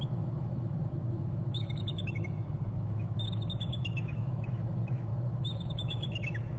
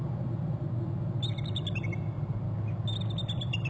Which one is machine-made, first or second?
first